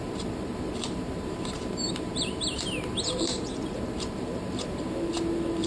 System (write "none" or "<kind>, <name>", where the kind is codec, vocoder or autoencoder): vocoder, BigVGAN v2